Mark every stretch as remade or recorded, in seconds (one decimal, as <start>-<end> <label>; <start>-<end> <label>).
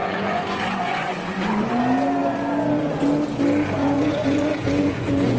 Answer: 0.0-1.7 remade; 1.7-3.8 recorded; 3.8-5.4 remade